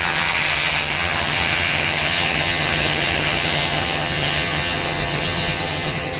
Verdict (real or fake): fake